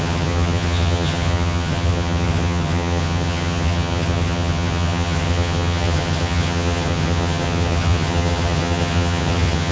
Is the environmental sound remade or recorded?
remade